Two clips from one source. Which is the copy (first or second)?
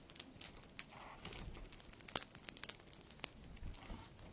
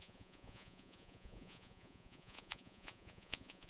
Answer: second